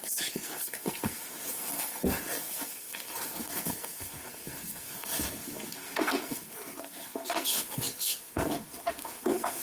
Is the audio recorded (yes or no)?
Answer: no